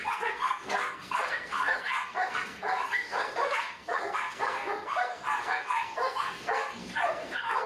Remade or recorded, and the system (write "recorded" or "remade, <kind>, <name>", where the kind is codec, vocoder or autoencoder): remade, codec, SNAC